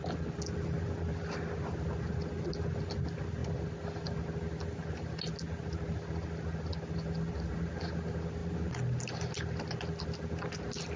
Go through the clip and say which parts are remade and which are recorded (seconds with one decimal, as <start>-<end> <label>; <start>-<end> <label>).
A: 0.0-11.0 recorded